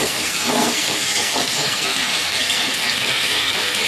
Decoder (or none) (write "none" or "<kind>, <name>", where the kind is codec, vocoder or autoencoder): codec, SNAC